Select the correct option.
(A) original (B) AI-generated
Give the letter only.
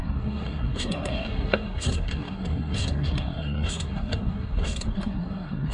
B